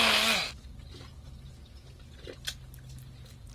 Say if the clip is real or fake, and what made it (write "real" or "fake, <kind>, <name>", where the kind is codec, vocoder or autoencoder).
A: real